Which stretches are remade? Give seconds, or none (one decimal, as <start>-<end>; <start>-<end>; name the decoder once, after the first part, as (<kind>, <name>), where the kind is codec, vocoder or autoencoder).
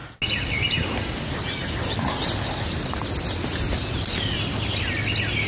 none